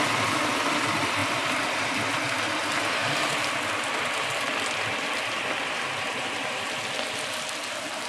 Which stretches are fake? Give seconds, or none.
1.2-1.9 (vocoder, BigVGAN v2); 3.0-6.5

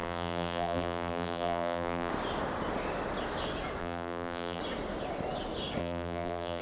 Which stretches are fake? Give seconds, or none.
0.0-2.1 (vocoder, BigVGAN v2); 3.8-4.6; 5.8-6.6